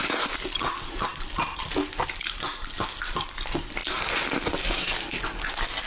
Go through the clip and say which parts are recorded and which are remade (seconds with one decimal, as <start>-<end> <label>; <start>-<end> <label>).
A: 0.0-5.9 recorded